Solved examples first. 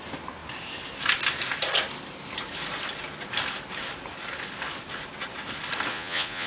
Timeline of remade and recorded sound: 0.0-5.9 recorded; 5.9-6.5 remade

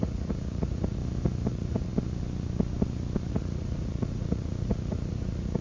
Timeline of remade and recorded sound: 0.0-1.0 remade; 1.0-1.5 recorded; 1.5-1.9 remade; 1.9-3.3 recorded; 3.3-5.6 remade

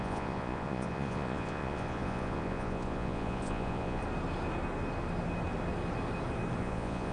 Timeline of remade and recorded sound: 0.0-4.0 remade; 4.0-6.6 recorded; 6.6-7.1 remade

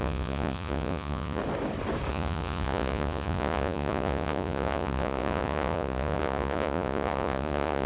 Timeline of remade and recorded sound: 0.0-1.4 remade; 1.4-2.1 recorded; 2.1-7.9 remade

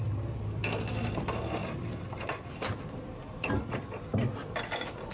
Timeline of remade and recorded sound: 0.0-5.1 recorded

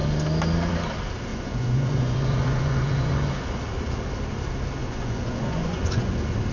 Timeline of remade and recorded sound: 0.0-1.3 recorded; 1.3-3.3 remade; 3.3-4.8 recorded; 4.8-6.1 remade; 6.1-6.5 recorded